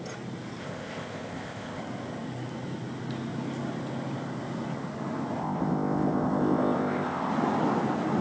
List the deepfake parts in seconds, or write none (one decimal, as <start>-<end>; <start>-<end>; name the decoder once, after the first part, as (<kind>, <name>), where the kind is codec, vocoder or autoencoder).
0.6-1.8 (codec, ZipCodec); 5.4-7.3